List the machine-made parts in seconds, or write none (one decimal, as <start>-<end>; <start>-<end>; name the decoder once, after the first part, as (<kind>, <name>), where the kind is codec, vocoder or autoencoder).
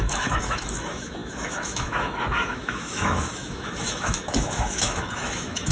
0.0-5.7 (autoencoder, DAC-VAE)